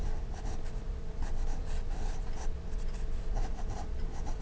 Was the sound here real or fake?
real